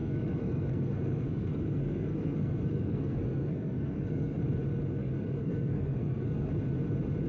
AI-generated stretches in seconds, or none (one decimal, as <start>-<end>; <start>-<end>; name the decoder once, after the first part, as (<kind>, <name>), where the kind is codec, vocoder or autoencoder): 0.0-4.4 (codec, SNAC); 5.0-6.5